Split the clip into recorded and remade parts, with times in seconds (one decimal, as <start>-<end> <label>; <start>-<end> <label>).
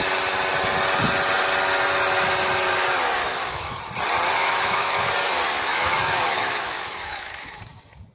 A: 0.0-3.2 recorded; 3.2-3.8 remade; 3.8-4.4 recorded; 4.4-5.1 remade; 5.1-5.7 recorded; 5.7-7.6 remade; 7.6-8.1 recorded